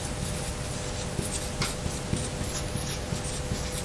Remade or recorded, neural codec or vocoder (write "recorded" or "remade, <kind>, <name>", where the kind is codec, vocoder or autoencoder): recorded